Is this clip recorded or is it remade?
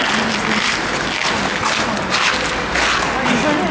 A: recorded